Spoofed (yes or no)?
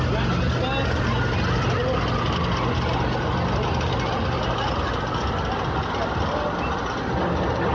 no